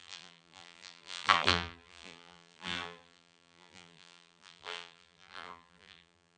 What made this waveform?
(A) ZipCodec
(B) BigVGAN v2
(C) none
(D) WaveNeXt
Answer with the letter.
B